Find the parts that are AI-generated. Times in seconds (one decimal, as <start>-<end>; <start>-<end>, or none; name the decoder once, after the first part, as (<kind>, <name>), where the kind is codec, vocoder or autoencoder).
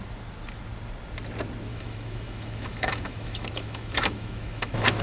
1.7-5.0 (autoencoder, DAC-VAE)